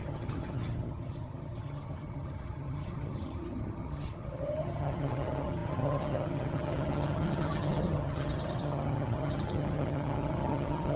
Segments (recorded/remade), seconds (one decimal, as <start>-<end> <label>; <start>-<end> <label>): 0.0-11.0 remade